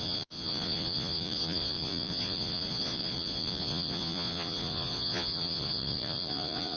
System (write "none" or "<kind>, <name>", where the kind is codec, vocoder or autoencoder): vocoder, Vocos